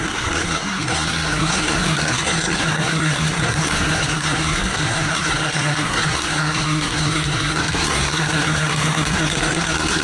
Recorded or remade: remade